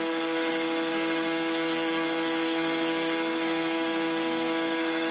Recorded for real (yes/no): no